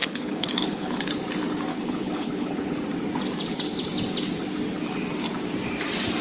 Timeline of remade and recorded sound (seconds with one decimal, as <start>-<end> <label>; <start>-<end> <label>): 0.0-1.1 remade; 1.1-1.7 recorded; 1.7-2.8 remade; 2.8-6.2 recorded